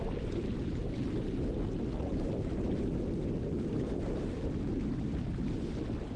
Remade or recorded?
recorded